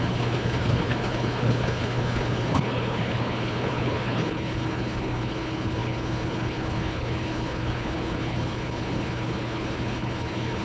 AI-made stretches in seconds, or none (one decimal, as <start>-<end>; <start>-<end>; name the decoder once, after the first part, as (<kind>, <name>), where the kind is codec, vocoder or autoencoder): 0.0-10.6 (codec, HILCodec)